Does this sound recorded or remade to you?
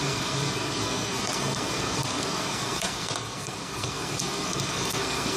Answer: remade